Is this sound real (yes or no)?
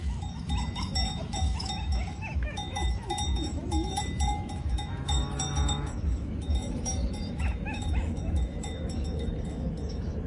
no